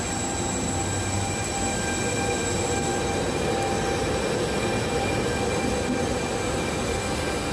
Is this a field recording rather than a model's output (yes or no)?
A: yes